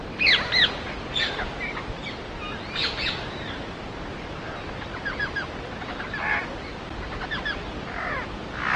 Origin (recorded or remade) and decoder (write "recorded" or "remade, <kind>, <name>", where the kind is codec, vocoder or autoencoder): recorded